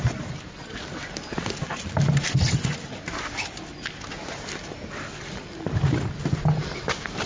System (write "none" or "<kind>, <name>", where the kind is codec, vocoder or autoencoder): none